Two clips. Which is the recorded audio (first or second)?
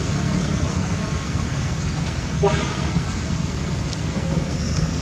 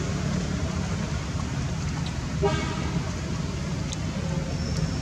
second